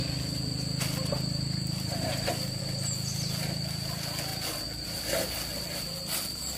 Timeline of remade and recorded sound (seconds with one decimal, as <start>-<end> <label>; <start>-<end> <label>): 0.0-6.6 recorded